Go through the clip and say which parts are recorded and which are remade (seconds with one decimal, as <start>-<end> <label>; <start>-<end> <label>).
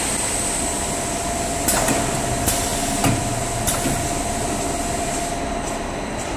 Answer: 0.0-6.4 recorded